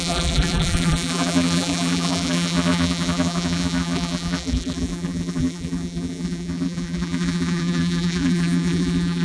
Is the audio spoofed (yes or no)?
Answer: yes